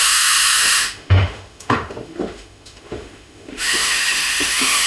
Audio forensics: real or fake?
fake